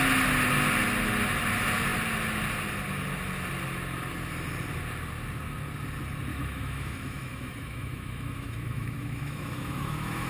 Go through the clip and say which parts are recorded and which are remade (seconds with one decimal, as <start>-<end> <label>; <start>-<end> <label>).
0.0-6.3 recorded; 6.3-10.3 remade